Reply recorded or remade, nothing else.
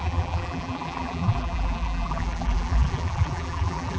remade